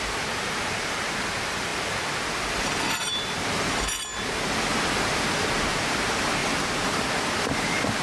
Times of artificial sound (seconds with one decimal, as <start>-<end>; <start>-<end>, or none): 0.0-4.1; 4.9-8.0